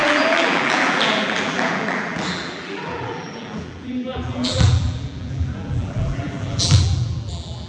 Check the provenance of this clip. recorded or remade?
remade